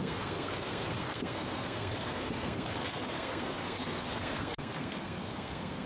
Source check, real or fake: fake